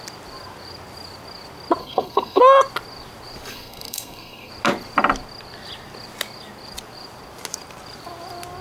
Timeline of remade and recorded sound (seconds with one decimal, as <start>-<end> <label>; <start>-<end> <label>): 0.0-1.8 recorded; 1.8-2.4 remade; 2.4-3.5 recorded; 3.5-4.5 remade; 4.5-8.6 recorded

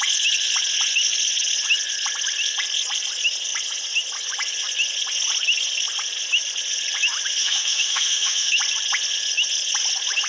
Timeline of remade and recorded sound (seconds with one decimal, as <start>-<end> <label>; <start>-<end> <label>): 0.0-7.4 recorded; 7.4-8.5 remade; 8.5-10.3 recorded

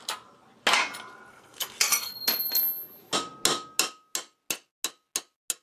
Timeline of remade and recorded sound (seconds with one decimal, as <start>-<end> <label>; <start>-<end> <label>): 0.0-1.3 recorded; 1.3-2.1 remade; 2.1-5.6 recorded